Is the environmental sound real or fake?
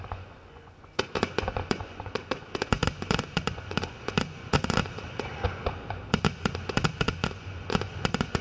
fake